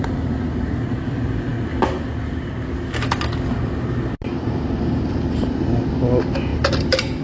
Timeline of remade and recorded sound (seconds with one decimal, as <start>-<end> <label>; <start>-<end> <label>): 0.0-1.5 remade; 1.5-4.6 recorded; 4.6-7.2 remade

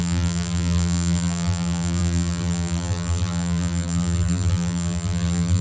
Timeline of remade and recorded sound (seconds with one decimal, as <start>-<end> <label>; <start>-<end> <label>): 0.0-5.6 remade

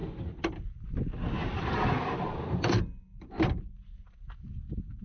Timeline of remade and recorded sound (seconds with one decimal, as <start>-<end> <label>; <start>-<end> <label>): 0.0-5.0 recorded

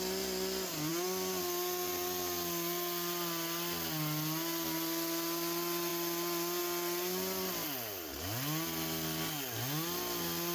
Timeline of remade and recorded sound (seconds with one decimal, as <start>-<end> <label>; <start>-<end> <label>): 0.0-10.5 recorded

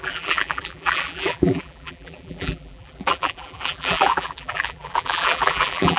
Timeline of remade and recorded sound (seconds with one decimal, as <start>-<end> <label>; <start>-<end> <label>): 0.0-6.0 remade

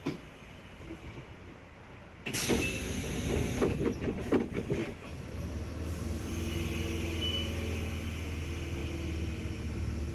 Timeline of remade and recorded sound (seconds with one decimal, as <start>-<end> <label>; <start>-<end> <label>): 0.0-4.8 recorded; 4.8-6.3 remade; 6.3-10.1 recorded

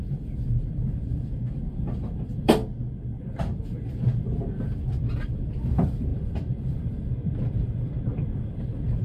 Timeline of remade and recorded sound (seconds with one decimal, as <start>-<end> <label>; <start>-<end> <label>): 0.0-2.6 remade; 2.6-3.2 recorded; 3.2-9.0 remade